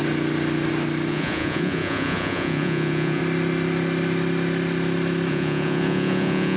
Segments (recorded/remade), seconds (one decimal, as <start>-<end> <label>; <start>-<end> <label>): 0.0-1.1 recorded; 1.1-3.2 remade; 3.2-5.3 recorded; 5.3-6.6 remade